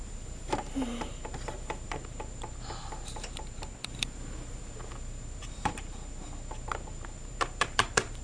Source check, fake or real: fake